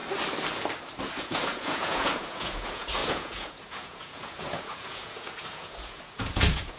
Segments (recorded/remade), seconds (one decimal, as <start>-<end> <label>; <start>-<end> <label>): 0.0-1.2 recorded; 1.2-6.8 remade